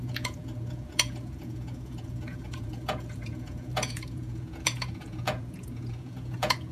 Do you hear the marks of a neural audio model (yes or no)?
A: yes